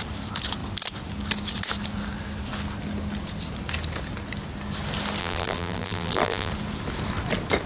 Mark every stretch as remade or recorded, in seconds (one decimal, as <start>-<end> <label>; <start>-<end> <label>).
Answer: 0.0-5.2 recorded; 5.2-6.5 remade; 6.5-7.7 recorded